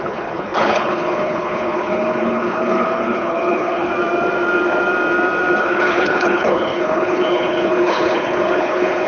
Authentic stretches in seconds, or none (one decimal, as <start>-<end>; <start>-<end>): 3.9-5.6